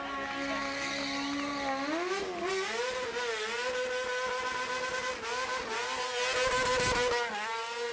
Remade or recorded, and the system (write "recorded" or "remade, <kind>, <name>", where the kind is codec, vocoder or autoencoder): recorded